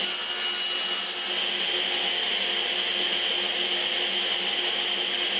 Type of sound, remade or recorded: recorded